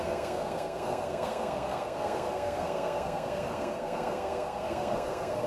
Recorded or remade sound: remade